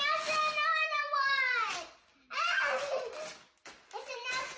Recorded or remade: recorded